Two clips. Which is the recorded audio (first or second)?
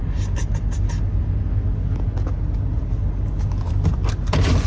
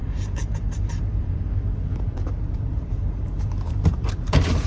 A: first